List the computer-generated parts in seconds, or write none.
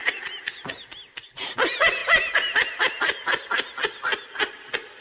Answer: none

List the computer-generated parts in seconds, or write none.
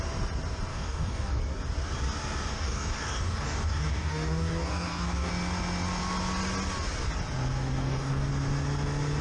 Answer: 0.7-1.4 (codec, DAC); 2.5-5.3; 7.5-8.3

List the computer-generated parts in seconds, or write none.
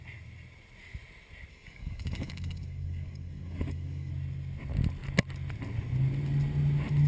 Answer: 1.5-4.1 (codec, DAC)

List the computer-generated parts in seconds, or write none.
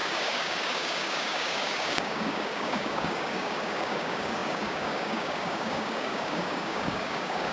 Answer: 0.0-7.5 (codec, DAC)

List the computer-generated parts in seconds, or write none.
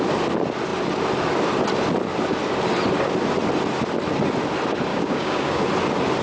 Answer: 4.9-5.6 (codec, DAC)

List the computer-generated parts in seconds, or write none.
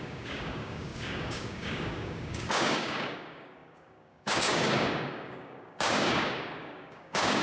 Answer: 0.0-7.4 (codec, DAC)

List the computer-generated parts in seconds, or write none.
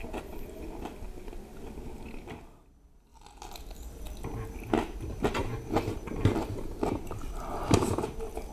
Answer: none